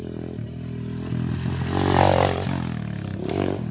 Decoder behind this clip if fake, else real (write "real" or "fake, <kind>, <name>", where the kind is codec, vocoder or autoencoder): real